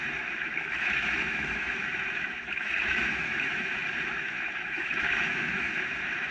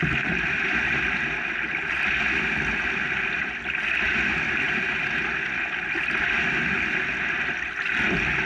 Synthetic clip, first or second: first